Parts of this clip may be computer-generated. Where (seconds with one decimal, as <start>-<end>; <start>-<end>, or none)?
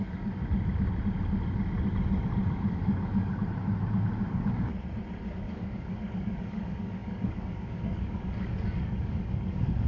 0.0-0.4; 2.7-3.4; 4.3-4.7; 5.4-9.9